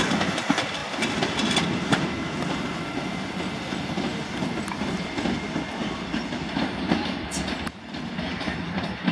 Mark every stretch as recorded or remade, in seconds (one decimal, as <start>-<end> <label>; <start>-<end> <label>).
0.0-9.1 recorded